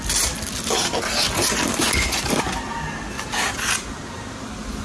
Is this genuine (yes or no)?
yes